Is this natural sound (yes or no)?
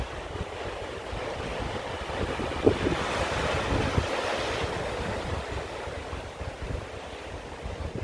yes